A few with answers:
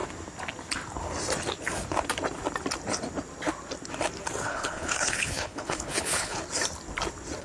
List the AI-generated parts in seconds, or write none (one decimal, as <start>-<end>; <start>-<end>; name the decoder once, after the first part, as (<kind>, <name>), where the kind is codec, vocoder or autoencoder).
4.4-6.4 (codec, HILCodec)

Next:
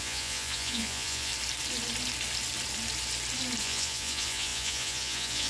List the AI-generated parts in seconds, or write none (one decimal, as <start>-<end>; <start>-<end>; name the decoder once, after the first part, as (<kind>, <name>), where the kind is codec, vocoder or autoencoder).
0.0-1.3 (vocoder, Vocos); 3.6-5.5

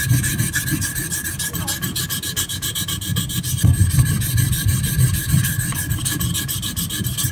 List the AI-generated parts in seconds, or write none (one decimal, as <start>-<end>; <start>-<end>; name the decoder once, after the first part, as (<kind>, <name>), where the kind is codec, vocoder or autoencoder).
none

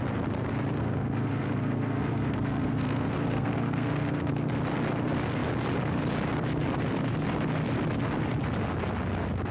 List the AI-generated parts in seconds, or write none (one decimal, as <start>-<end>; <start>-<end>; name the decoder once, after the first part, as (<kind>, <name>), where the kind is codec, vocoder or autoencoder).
0.8-4.3 (codec, SNAC)

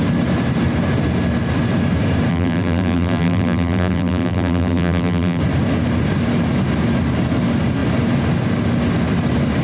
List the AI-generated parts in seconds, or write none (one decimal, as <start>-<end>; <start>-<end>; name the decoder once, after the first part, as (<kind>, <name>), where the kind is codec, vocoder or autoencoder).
2.3-5.4 (vocoder, BigVGAN v2)

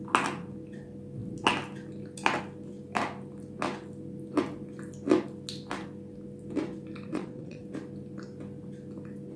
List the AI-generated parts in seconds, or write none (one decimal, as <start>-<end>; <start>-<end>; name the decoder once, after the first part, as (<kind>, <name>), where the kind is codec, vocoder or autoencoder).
7.1-7.6 (vocoder, Vocos)

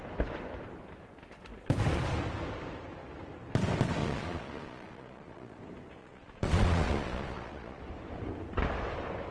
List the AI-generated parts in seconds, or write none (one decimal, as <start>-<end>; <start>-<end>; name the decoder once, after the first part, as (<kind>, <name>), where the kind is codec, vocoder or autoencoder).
4.0-5.6 (vocoder, Vocos); 6.0-7.8

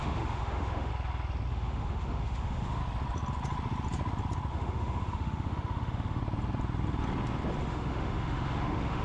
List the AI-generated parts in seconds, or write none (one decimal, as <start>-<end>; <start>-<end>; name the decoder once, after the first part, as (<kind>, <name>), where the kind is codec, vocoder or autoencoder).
0.0-0.9 (autoencoder, DAC-VAE); 1.5-2.8; 4.5-6.2; 7.6-9.0